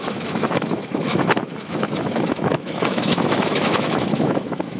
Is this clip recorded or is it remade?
remade